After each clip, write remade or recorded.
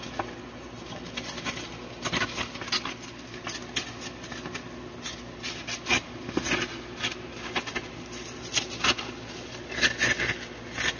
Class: recorded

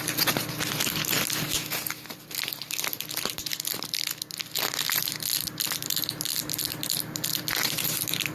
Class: recorded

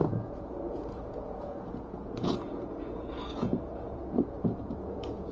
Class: remade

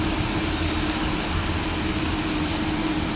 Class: recorded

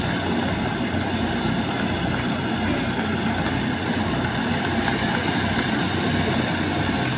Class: recorded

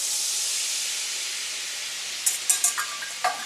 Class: recorded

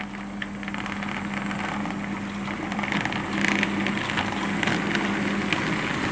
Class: recorded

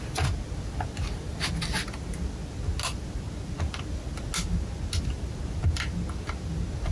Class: recorded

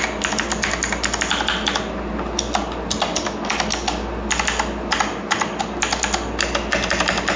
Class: recorded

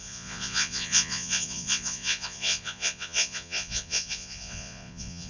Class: remade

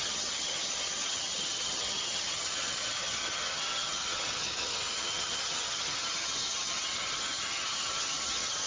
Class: remade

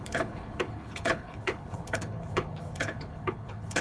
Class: remade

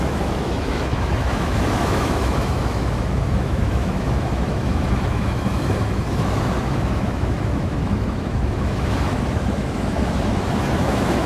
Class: remade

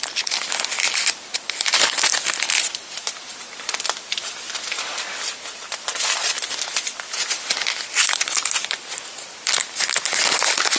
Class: recorded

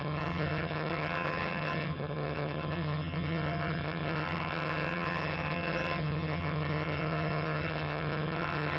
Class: remade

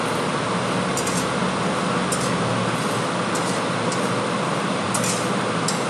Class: recorded